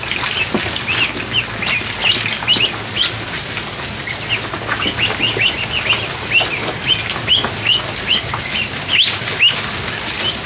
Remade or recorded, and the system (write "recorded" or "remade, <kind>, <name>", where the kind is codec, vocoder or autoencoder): recorded